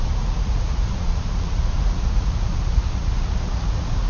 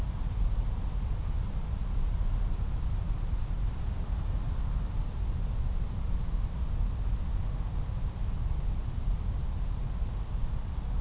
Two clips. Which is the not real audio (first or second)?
first